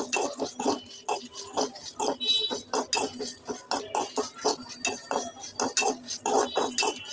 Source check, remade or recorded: recorded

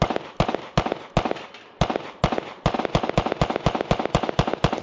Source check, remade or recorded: recorded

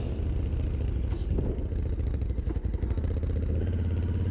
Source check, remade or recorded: recorded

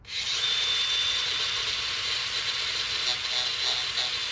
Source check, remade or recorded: recorded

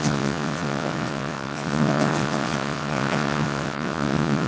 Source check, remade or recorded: remade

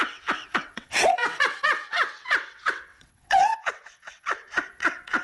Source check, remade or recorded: remade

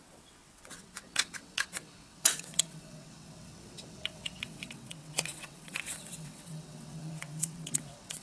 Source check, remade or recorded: remade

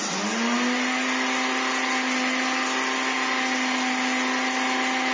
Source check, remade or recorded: recorded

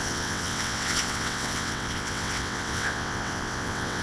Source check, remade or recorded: remade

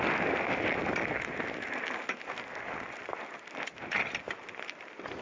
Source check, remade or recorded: recorded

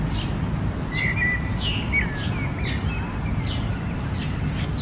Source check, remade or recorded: recorded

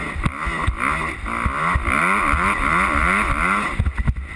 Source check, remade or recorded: recorded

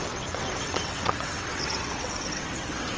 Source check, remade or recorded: remade